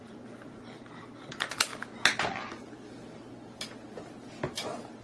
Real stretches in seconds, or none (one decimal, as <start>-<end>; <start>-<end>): 0.0-5.0